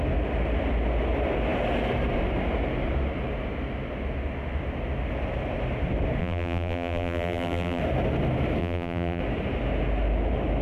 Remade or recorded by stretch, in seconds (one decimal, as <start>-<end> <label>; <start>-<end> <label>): 0.0-6.2 recorded; 6.2-7.8 remade; 7.8-8.6 recorded; 8.6-9.2 remade; 9.2-10.6 recorded